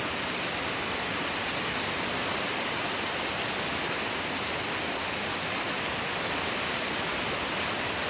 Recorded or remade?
recorded